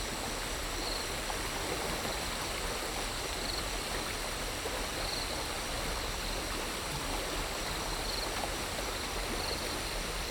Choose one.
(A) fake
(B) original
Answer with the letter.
B